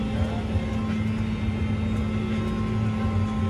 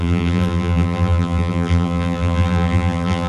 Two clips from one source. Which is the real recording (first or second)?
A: first